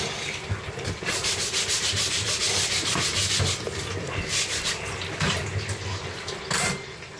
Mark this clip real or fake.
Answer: real